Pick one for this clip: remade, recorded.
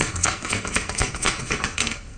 remade